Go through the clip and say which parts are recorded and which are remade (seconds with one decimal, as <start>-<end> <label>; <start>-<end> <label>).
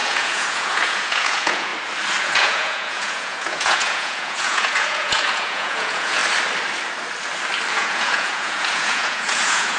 0.0-1.7 remade; 1.7-2.2 recorded; 2.2-6.2 remade; 6.2-7.7 recorded; 7.7-9.8 remade